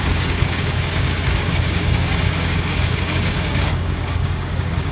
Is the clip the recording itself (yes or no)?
no